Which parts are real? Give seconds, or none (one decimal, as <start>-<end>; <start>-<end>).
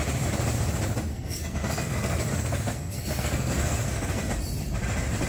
0.0-1.1; 4.3-5.3